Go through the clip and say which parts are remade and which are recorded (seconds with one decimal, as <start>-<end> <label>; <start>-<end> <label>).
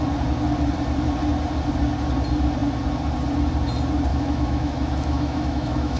0.0-4.1 recorded; 4.1-6.0 remade